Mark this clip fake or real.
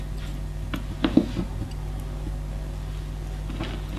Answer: real